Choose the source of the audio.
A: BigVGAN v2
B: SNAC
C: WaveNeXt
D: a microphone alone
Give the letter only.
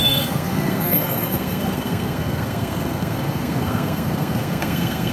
B